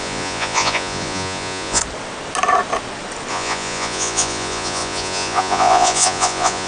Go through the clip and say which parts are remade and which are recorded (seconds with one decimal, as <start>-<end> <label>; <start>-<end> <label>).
0.0-1.8 remade; 1.8-3.3 recorded; 3.3-6.7 remade